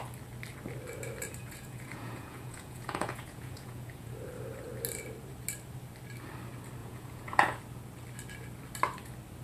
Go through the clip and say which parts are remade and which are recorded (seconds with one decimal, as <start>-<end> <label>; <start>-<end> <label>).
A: 0.0-1.4 recorded; 1.4-4.1 remade; 4.1-6.8 recorded; 6.8-7.6 remade; 7.6-9.4 recorded